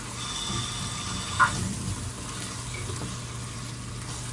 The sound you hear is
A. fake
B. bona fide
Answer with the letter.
B